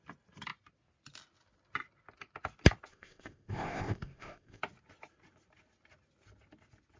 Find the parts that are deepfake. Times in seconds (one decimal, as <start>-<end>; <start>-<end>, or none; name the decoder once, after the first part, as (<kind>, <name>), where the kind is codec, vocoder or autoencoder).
2.9-4.6 (codec, ZipCodec)